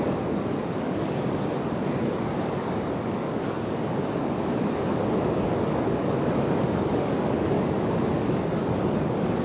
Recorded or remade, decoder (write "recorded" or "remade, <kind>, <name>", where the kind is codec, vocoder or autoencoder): remade, codec, DAC